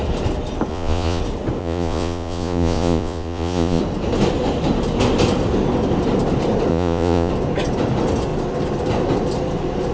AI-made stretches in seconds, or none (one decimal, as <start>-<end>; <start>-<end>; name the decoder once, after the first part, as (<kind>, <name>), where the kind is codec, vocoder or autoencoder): 0.7-1.2 (vocoder, Vocos); 1.6-3.8; 6.7-7.3